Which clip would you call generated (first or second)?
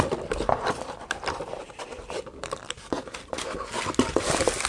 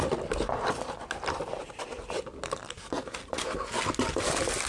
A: first